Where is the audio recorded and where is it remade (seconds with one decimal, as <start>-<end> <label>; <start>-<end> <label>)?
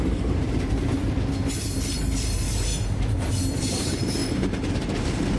0.0-1.0 remade; 1.0-1.6 recorded; 1.6-5.4 remade